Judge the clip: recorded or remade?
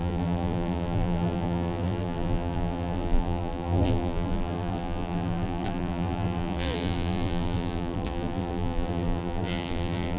remade